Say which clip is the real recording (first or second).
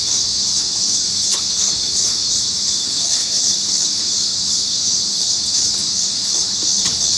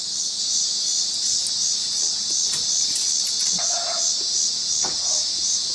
second